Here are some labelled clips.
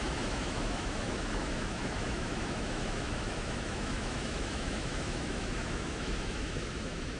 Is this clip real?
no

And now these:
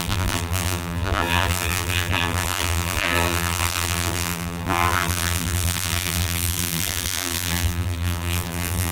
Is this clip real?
no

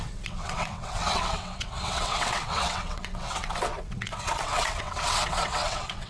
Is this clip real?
no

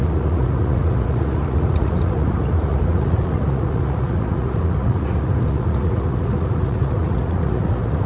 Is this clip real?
no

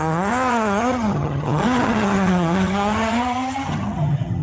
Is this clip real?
no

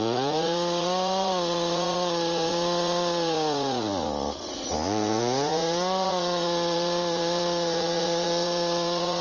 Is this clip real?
no